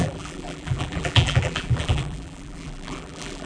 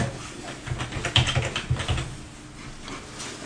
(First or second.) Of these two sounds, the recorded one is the second